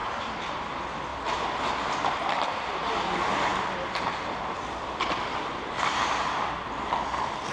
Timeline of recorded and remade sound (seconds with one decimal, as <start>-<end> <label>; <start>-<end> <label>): 0.0-0.7 remade; 0.7-1.1 recorded; 1.1-2.4 remade; 2.4-3.5 recorded; 3.5-6.9 remade; 6.9-7.5 recorded